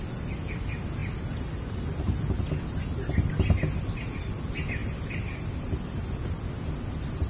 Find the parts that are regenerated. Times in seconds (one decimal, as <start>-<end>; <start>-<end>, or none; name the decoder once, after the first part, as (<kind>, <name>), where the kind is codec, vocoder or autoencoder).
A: none